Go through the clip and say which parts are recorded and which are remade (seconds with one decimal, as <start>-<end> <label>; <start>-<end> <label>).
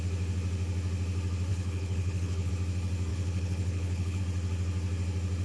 0.0-1.5 recorded; 1.5-2.5 remade; 2.5-3.1 recorded; 3.1-4.2 remade; 4.2-5.4 recorded